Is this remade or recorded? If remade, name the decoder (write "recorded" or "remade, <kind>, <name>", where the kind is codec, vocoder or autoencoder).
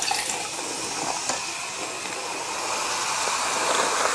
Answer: recorded